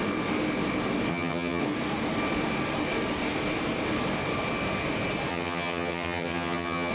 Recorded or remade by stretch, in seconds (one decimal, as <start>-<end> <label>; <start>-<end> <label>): 0.0-1.1 recorded; 1.1-1.6 remade; 1.6-5.3 recorded; 5.3-6.9 remade